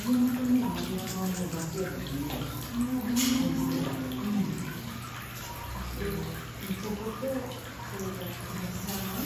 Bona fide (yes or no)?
yes